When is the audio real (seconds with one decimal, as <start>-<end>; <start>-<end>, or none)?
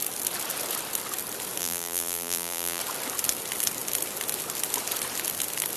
0.0-1.6; 2.8-5.8